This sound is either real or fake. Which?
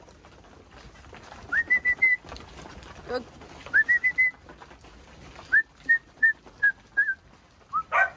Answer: real